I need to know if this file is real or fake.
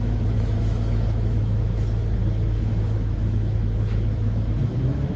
fake